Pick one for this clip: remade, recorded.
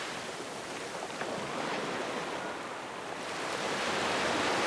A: recorded